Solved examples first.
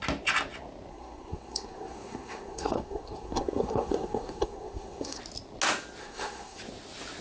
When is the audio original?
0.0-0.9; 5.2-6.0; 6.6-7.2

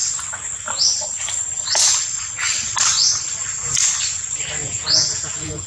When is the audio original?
0.0-4.6

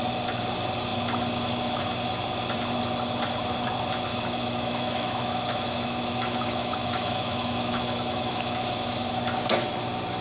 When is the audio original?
0.0-4.1; 9.1-10.2

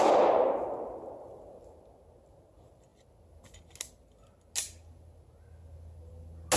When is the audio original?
0.0-6.6